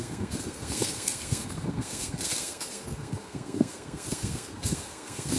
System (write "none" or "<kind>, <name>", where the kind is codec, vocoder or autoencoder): codec, SNAC